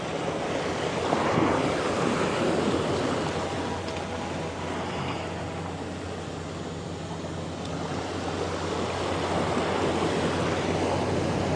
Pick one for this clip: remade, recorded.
recorded